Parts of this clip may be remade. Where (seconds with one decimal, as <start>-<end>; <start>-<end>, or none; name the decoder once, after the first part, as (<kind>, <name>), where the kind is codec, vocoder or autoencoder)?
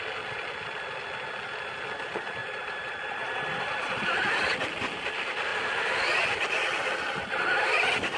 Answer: 2.4-4.0 (vocoder, BigVGAN v2)